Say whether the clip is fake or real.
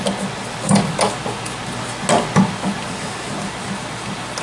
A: real